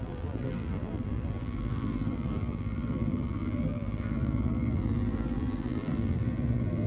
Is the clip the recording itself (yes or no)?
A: no